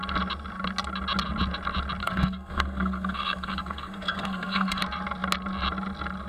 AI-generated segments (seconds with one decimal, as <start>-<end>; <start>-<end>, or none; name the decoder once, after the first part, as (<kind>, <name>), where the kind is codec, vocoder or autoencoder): 2.0-4.8 (codec, SNAC)